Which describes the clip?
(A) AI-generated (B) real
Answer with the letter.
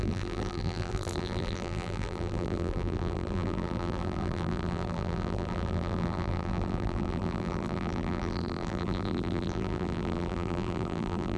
A